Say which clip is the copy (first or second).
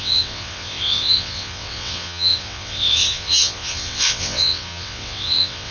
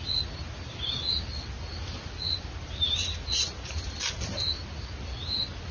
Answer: first